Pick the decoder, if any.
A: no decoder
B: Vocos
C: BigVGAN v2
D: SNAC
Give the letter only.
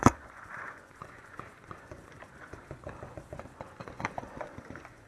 B